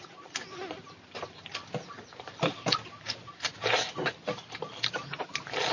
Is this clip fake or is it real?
real